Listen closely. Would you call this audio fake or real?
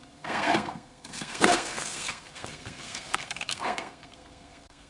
fake